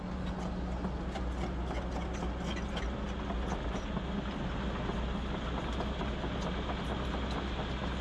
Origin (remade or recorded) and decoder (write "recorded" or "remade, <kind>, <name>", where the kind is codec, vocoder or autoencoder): recorded